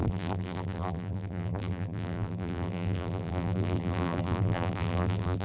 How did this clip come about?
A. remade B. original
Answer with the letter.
A